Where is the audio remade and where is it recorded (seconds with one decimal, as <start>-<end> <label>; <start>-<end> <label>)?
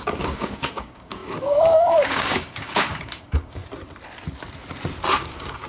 0.0-3.6 remade; 3.6-5.3 recorded; 5.3-5.7 remade